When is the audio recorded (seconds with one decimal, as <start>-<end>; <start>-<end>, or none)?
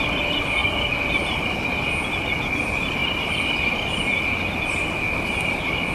0.0-5.9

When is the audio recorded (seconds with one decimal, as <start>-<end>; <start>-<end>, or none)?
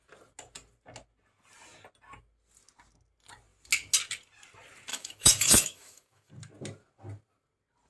0.0-4.9; 6.3-7.9